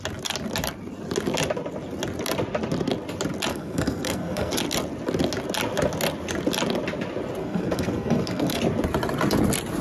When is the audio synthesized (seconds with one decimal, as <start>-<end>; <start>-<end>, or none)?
3.5-4.6; 7.4-8.6